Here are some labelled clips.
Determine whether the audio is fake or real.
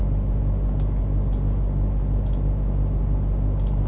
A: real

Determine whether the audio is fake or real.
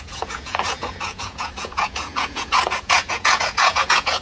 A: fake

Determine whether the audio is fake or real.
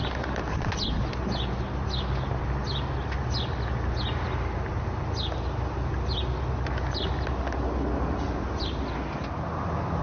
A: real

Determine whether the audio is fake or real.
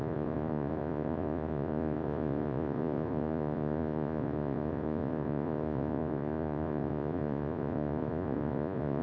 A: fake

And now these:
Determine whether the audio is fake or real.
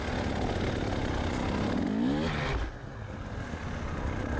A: real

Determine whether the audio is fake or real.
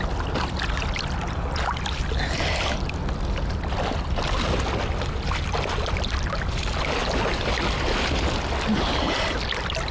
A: real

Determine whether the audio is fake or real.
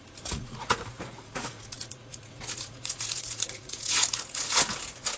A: fake